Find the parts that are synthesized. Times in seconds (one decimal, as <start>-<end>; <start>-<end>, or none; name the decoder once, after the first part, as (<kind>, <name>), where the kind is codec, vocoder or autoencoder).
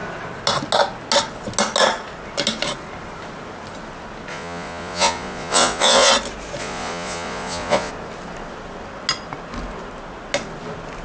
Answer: 4.3-6.1 (vocoder, Vocos); 6.6-7.9